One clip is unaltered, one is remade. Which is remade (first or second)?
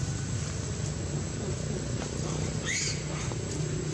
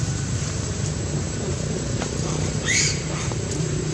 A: second